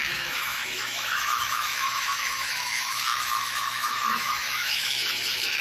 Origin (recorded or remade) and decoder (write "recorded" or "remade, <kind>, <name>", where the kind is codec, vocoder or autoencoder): remade, autoencoder, DAC-VAE